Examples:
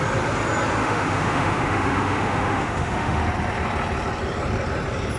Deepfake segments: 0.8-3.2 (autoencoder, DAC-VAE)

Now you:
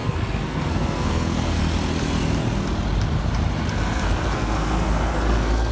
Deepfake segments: 0.0-1.6 (codec, SNAC); 3.7-5.7

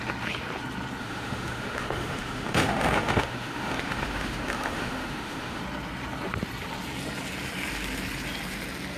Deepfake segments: 1.0-5.6 (autoencoder, DAC-VAE)